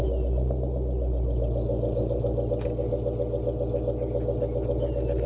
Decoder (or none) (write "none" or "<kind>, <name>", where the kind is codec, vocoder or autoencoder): none